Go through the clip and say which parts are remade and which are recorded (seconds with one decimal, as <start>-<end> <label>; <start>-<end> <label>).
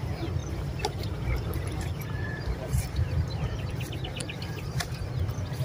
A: 0.0-0.4 recorded; 0.4-3.7 remade; 3.7-4.2 recorded; 4.2-5.1 remade; 5.1-5.6 recorded